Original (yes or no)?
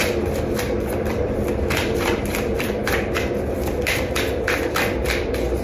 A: no